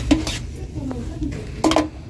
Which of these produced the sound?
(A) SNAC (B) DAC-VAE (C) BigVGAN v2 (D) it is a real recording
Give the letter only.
D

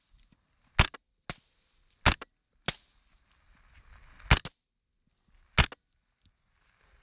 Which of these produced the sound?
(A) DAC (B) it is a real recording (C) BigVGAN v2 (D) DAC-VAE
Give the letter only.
B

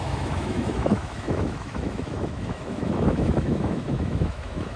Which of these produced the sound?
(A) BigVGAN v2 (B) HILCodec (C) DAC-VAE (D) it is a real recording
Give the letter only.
C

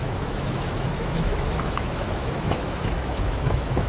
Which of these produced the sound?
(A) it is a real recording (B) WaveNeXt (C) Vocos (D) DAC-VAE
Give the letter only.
D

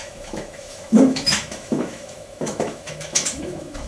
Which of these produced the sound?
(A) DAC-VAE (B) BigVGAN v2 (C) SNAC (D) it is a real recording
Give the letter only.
A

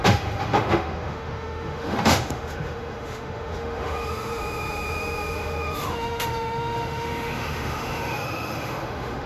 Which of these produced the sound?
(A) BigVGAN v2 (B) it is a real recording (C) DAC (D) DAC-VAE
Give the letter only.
D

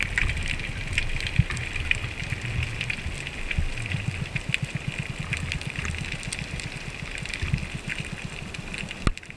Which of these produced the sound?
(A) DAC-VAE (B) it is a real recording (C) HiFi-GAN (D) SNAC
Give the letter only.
B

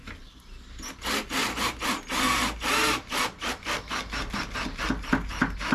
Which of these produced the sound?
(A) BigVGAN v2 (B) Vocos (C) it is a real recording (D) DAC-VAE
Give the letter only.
C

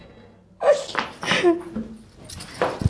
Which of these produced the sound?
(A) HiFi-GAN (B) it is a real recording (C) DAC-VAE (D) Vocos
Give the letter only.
B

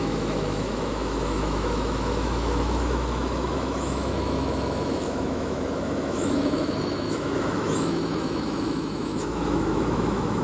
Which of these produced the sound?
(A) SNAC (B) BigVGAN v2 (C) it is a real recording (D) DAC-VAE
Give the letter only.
D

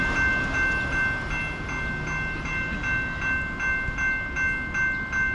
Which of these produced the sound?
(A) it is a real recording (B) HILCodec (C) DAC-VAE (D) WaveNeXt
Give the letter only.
A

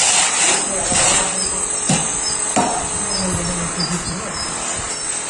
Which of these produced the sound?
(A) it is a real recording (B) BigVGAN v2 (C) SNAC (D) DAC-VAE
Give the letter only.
A